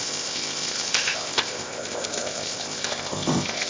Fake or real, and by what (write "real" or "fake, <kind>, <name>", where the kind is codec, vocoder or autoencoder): fake, codec, ZipCodec